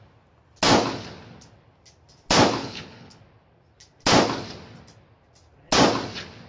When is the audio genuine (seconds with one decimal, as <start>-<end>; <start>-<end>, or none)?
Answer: 0.0-2.6; 3.2-6.5